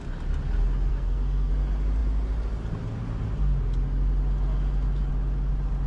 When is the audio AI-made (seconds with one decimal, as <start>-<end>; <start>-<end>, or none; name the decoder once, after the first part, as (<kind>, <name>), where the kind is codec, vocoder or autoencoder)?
0.9-1.5 (codec, SNAC)